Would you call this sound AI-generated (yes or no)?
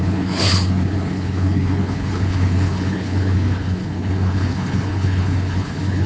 yes